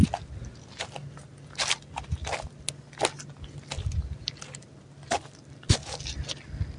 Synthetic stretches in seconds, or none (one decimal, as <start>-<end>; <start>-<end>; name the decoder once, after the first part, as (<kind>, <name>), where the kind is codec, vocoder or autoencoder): none